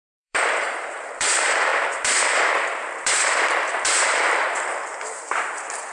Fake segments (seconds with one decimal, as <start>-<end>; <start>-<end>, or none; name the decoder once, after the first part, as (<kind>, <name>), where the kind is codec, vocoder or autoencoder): 0.0-5.9 (vocoder, BigVGAN v2)